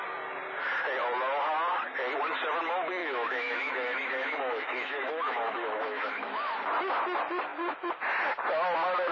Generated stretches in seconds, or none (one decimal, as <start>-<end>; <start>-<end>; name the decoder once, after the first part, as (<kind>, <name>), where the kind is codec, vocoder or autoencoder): 3.0-6.5 (autoencoder, DAC-VAE)